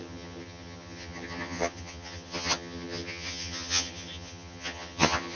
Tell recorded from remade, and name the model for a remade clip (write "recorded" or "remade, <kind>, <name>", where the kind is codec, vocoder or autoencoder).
remade, vocoder, HiFi-GAN